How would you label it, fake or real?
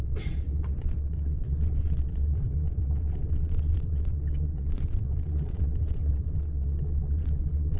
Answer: fake